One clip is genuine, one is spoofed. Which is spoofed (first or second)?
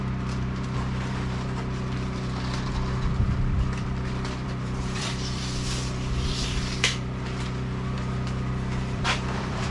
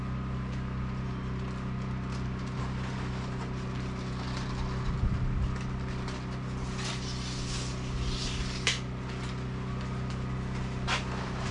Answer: first